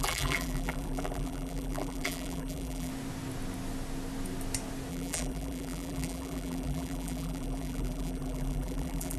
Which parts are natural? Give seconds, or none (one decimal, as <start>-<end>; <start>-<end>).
2.9-4.9